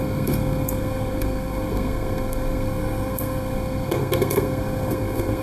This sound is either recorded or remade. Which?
remade